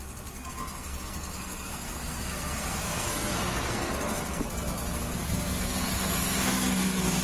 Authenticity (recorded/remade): remade